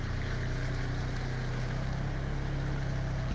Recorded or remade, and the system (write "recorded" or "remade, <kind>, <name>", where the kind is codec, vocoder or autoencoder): recorded